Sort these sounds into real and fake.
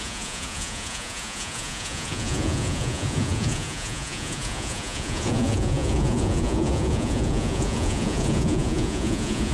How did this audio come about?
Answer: fake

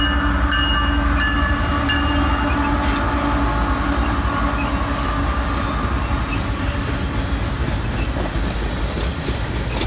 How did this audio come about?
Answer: real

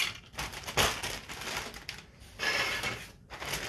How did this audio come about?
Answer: real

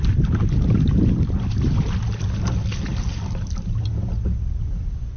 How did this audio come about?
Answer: real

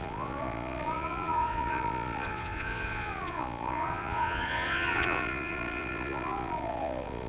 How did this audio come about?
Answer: fake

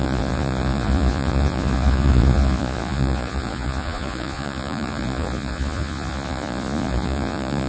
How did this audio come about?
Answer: fake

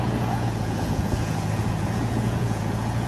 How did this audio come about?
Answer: fake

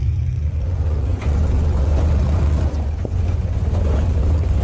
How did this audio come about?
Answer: fake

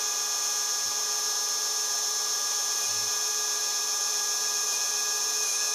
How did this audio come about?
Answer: real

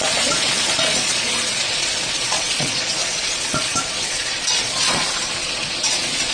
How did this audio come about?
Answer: fake